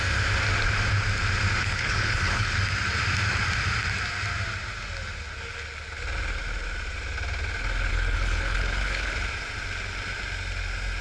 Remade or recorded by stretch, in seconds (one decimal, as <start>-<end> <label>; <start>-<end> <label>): 0.0-1.6 recorded; 1.6-2.6 remade; 2.6-7.9 recorded; 7.9-9.1 remade; 9.1-11.0 recorded